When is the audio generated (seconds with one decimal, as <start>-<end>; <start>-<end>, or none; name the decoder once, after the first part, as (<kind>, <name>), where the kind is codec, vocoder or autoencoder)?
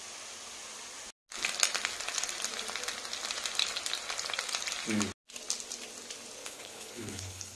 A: 6.4-7.6 (codec, HILCodec)